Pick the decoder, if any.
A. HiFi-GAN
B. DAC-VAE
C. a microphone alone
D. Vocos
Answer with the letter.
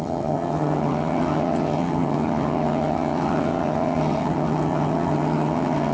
A